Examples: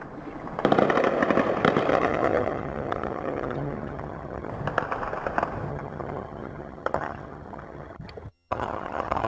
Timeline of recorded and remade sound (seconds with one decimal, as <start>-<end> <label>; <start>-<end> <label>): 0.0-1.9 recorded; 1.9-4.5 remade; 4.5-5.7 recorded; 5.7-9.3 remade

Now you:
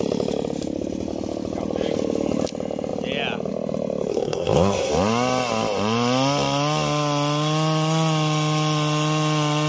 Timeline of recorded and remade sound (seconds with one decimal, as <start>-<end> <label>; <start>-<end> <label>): 0.0-4.1 recorded; 4.1-4.9 remade; 4.9-9.7 recorded

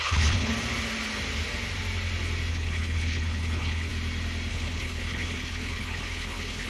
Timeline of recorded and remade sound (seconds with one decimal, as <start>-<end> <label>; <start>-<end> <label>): 0.0-0.5 remade; 0.5-2.5 recorded; 2.5-3.9 remade; 3.9-4.5 recorded; 4.5-6.7 remade

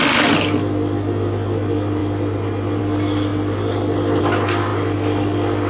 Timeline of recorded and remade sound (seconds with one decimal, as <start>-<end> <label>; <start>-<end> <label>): 0.0-5.7 recorded